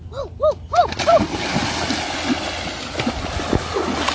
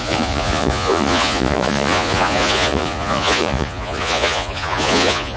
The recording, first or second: first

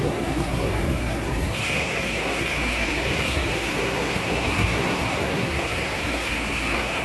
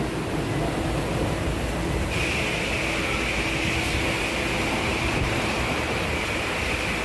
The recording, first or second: second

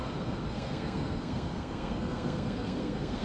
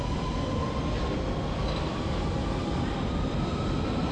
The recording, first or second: second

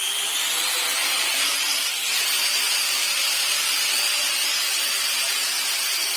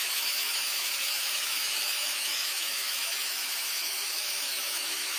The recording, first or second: first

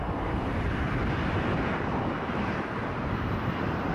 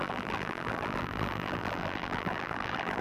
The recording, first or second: first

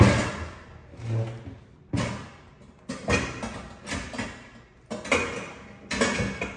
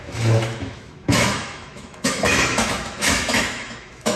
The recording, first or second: first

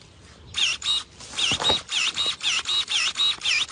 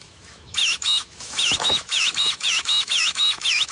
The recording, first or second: first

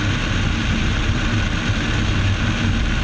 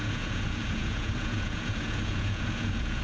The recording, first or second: first